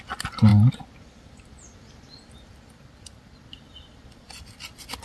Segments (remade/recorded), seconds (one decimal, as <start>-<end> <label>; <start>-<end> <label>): 0.0-5.0 recorded